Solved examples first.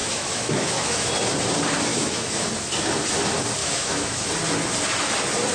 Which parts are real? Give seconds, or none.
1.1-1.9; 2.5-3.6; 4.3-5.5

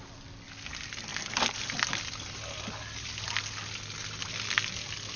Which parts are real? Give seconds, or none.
0.0-1.1; 1.9-5.2

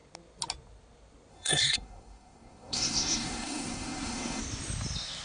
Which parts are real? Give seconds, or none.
0.0-1.3; 4.4-5.2

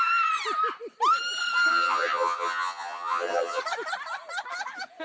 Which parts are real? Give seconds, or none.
0.0-1.7; 3.6-5.0

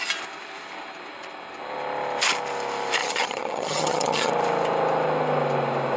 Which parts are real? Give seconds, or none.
0.0-3.0; 4.3-6.0

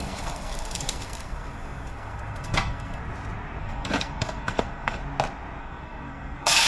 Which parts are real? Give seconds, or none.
3.0-3.6; 5.0-5.6